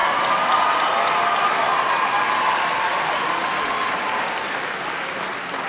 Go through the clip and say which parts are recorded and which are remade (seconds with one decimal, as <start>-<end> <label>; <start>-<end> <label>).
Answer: 0.0-5.7 recorded